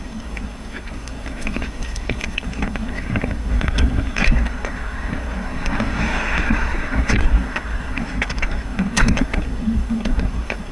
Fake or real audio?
fake